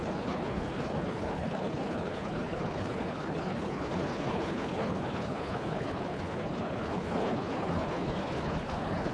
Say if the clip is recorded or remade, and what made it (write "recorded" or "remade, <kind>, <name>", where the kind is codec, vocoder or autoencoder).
remade, codec, HILCodec